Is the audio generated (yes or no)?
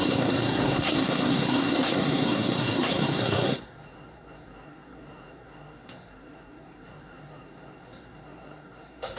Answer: yes